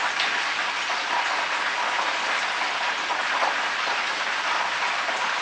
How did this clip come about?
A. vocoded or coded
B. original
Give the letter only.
B